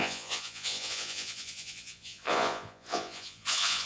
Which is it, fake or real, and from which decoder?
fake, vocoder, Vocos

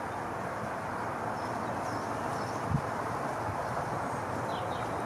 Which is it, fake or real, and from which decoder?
real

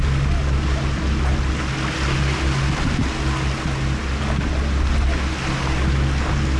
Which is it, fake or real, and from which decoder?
real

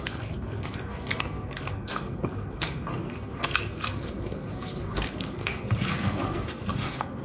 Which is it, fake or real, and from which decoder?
fake, codec, SNAC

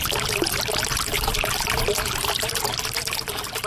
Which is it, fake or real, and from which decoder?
real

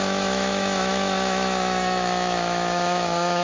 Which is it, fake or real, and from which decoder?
fake, autoencoder, DAC-VAE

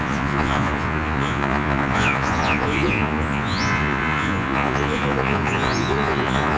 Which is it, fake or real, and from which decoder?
fake, vocoder, Vocos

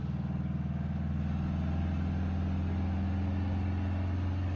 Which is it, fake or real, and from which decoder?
real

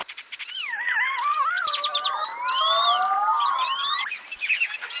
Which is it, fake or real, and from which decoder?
real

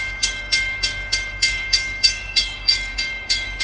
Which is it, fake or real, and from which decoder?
fake, codec, DAC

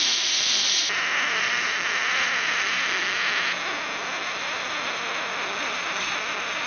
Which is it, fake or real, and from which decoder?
real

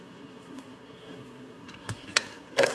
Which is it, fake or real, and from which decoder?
fake, codec, SNAC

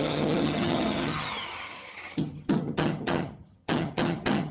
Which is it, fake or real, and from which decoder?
fake, vocoder, HiFi-GAN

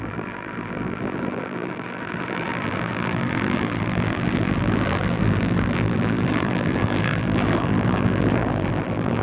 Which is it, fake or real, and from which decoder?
fake, vocoder, BigVGAN v2